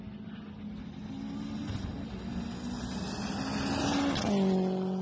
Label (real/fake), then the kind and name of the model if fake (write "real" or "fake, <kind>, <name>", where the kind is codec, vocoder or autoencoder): real